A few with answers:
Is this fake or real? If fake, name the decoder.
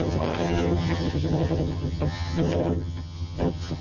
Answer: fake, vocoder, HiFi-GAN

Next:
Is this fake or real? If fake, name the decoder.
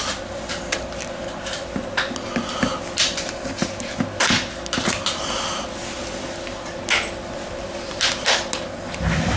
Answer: real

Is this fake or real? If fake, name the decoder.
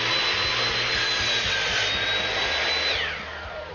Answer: real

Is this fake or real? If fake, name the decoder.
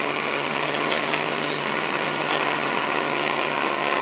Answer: fake, vocoder, HiFi-GAN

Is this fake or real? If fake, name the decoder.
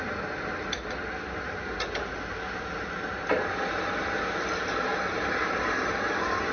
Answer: real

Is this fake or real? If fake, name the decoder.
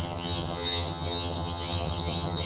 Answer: fake, vocoder, HiFi-GAN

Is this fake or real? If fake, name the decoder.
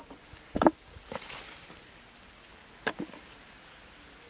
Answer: real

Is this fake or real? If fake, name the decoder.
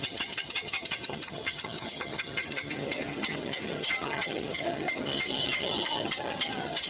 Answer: fake, vocoder, HiFi-GAN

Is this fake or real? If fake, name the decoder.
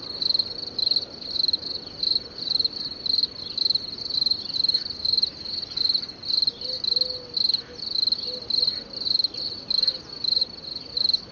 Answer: real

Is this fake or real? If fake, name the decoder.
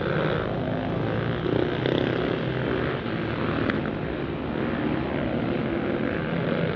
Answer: real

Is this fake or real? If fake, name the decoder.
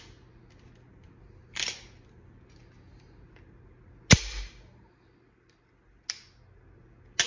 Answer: real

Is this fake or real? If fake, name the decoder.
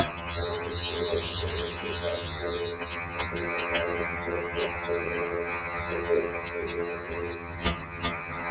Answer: fake, vocoder, HiFi-GAN